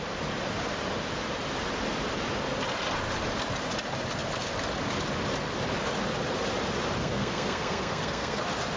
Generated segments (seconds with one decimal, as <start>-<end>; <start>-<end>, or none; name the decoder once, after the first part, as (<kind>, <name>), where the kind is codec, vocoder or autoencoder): 7.0-8.4 (codec, SNAC)